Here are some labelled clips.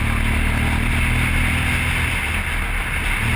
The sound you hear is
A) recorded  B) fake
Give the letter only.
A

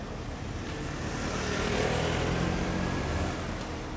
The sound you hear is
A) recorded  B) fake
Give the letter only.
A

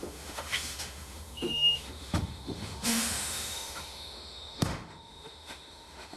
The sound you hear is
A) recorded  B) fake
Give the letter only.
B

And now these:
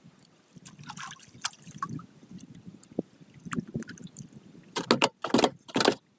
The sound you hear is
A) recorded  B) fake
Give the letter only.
A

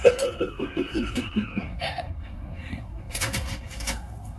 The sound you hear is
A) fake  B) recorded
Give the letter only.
A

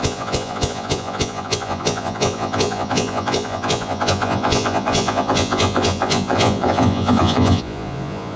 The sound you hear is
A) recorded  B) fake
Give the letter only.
B